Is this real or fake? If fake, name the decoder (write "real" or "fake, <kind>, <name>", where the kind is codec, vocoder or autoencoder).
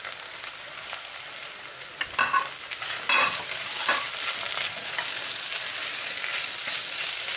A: real